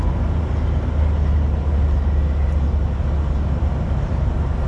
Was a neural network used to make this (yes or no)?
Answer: no